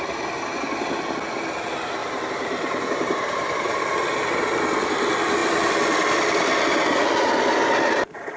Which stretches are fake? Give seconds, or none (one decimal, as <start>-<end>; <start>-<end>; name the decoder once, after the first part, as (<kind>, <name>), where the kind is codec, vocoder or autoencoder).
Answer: 2.0-3.8 (vocoder, BigVGAN v2)